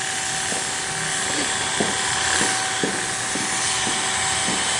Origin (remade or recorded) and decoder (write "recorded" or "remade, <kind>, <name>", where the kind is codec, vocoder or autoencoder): recorded